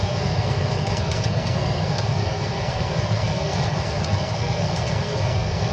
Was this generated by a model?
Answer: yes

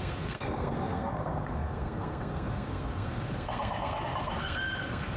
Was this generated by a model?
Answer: yes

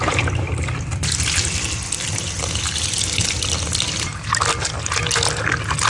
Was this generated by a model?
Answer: no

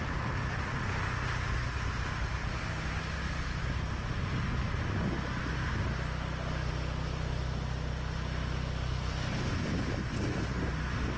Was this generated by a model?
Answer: no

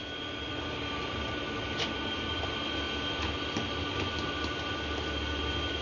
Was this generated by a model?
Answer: no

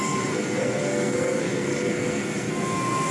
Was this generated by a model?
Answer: yes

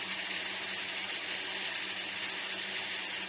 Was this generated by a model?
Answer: no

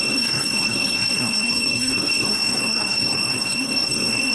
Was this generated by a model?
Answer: yes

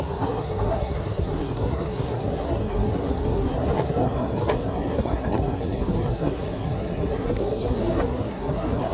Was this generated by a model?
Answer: yes